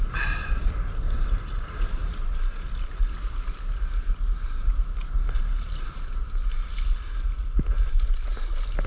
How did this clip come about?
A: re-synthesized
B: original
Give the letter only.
B